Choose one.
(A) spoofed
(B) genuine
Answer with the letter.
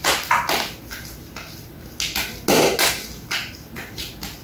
B